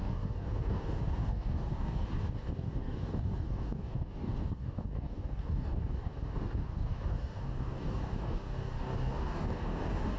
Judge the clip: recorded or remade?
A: remade